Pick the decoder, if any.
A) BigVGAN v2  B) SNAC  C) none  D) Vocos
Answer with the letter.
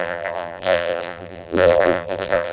A